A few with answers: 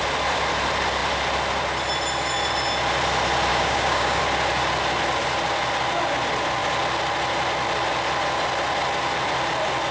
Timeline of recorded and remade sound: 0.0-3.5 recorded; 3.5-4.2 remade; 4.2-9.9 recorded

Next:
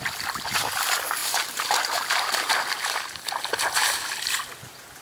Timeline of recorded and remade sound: 0.0-1.2 recorded; 1.2-3.2 remade; 3.2-5.0 recorded